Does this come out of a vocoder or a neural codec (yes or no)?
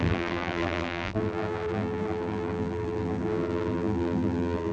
yes